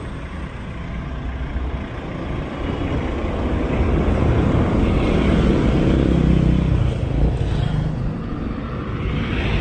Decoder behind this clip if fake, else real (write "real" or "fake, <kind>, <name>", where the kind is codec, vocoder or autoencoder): real